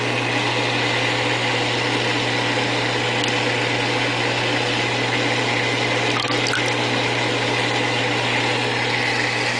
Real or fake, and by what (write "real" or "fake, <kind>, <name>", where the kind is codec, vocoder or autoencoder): real